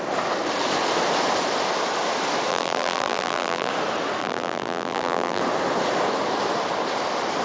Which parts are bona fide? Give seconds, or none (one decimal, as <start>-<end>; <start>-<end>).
0.0-2.5; 3.7-4.2; 5.4-7.4